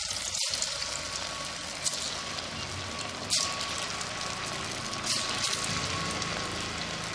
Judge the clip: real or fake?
real